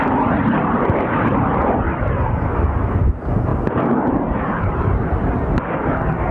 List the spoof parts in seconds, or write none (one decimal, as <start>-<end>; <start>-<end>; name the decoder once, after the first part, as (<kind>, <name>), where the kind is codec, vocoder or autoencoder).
3.5-5.1 (vocoder, BigVGAN v2)